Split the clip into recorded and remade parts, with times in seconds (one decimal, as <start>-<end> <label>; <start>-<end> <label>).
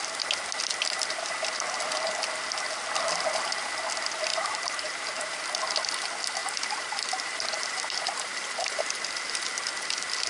0.0-4.3 recorded; 4.3-5.4 remade; 5.4-6.4 recorded; 6.4-8.8 remade; 8.8-10.3 recorded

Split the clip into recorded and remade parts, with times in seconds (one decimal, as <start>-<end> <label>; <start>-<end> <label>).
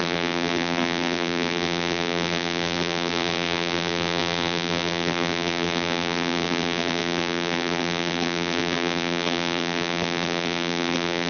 0.0-11.3 remade